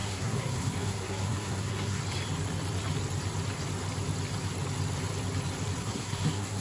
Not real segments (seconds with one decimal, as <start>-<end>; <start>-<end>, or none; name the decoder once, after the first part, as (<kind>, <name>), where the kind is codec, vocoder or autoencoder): 0.0-2.0 (codec, SNAC); 5.8-6.6